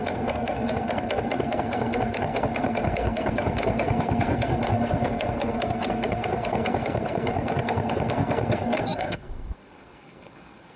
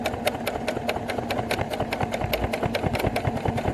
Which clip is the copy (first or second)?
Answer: first